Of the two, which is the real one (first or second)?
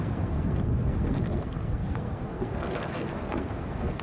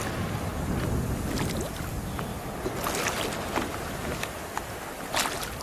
second